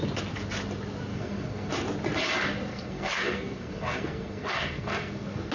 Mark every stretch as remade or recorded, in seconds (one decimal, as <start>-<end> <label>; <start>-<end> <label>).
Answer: 0.0-1.1 recorded; 1.1-1.7 remade; 1.7-2.7 recorded; 2.7-5.5 remade